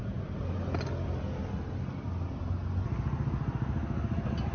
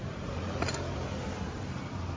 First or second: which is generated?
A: second